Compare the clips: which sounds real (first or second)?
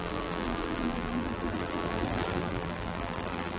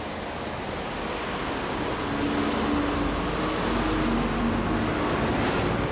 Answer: second